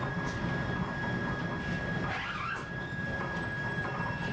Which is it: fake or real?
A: real